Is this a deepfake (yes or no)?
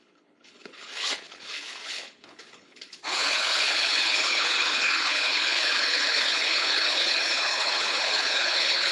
yes